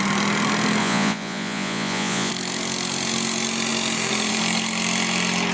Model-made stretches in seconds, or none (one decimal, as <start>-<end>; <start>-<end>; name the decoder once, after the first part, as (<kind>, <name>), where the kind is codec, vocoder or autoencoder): 0.8-2.3 (vocoder, Vocos)